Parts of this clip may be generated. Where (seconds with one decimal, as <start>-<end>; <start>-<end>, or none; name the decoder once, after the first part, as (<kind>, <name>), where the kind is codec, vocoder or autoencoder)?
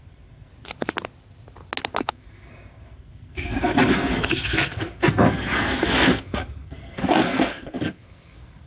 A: 0.0-0.5 (codec, SNAC); 2.0-8.7